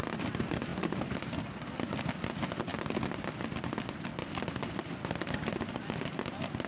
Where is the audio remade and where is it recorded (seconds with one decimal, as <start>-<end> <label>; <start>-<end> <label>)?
0.0-0.7 recorded; 0.7-2.2 remade; 2.2-6.7 recorded